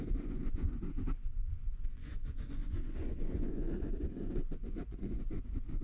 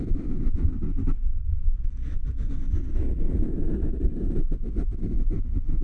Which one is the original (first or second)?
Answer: second